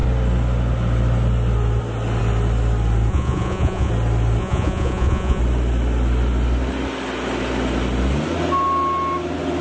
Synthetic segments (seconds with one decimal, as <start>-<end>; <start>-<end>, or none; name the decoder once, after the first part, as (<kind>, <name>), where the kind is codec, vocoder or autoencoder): 3.1-3.9 (vocoder, Vocos); 4.4-5.4